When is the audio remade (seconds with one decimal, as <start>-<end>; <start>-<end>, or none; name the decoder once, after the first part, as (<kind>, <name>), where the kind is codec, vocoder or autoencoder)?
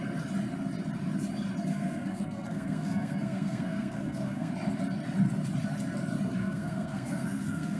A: 1.7-4.5 (codec, SNAC); 6.4-7.8